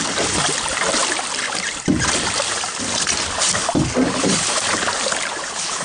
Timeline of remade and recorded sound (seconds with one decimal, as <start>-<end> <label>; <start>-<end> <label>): 0.0-5.8 recorded